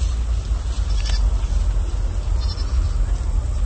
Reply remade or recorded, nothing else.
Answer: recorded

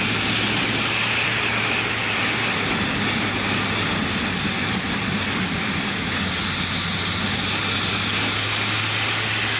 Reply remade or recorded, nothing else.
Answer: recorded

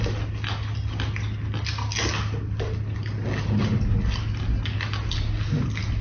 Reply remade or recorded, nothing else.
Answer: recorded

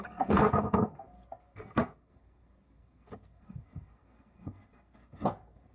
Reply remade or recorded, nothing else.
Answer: remade